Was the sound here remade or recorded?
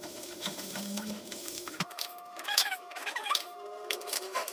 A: remade